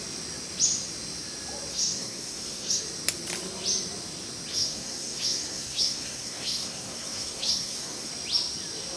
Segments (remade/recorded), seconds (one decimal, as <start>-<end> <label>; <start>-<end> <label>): 0.0-1.7 recorded; 1.7-2.8 remade; 2.8-4.5 recorded; 4.5-8.1 remade; 8.1-9.0 recorded